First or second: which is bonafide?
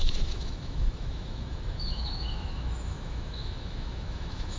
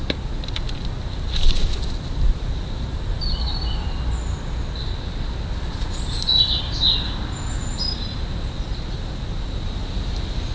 second